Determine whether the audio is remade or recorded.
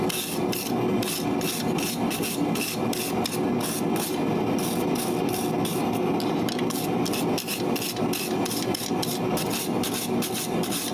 recorded